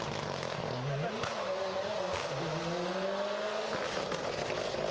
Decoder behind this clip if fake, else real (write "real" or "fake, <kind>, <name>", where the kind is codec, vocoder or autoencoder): real